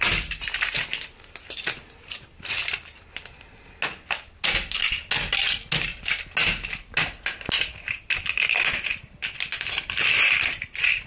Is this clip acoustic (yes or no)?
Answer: yes